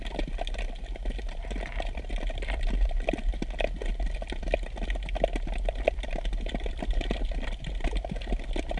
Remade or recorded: recorded